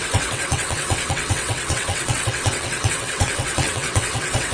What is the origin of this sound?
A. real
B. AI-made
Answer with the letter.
B